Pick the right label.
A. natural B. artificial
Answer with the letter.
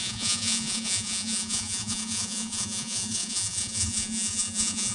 B